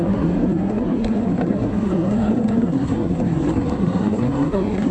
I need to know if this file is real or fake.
fake